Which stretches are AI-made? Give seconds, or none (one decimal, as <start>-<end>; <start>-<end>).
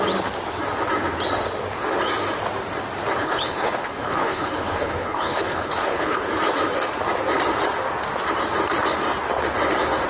3.2-6.2